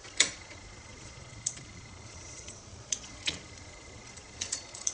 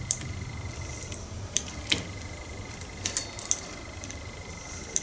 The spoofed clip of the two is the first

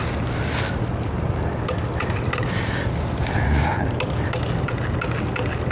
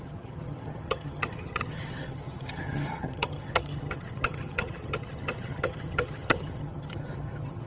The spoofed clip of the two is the second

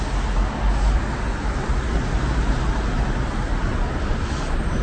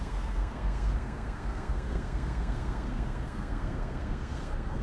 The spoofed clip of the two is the second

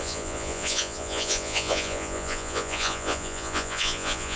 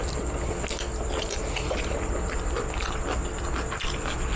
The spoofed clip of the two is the first